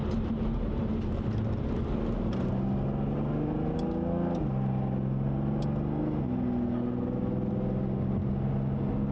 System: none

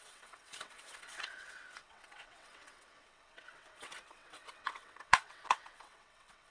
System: vocoder, WaveNeXt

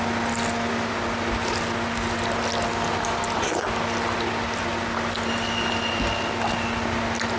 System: none